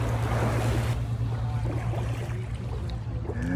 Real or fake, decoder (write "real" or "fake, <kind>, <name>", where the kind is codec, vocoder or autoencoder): real